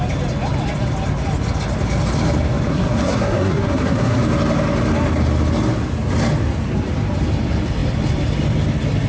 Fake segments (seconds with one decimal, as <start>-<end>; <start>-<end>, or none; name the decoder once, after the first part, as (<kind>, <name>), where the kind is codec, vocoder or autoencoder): 2.7-4.2 (codec, SNAC)